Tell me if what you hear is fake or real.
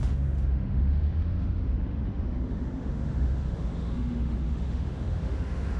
fake